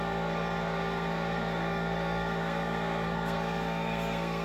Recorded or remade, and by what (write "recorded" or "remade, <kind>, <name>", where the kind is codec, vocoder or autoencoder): remade, codec, SNAC